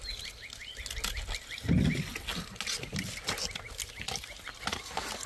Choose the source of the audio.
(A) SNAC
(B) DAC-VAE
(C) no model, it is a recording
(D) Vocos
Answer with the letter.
C